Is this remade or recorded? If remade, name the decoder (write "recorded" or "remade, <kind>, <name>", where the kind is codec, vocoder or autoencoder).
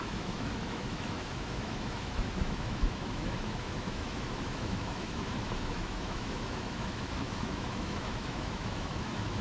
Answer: remade, autoencoder, DAC-VAE